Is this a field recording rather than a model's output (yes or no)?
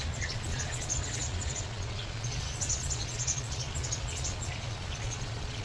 no